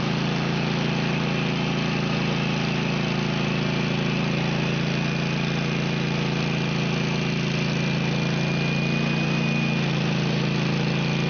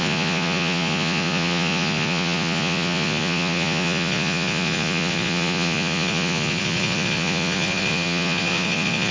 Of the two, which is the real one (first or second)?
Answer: first